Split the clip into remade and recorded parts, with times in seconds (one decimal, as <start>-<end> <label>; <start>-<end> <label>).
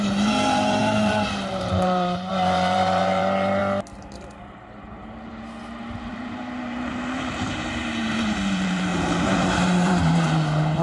0.0-3.6 remade; 3.6-4.4 recorded; 4.4-5.3 remade; 5.3-6.1 recorded; 6.1-10.8 remade